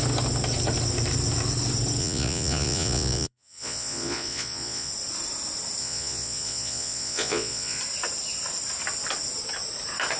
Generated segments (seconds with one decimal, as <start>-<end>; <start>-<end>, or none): 2.0-4.9; 5.8-7.8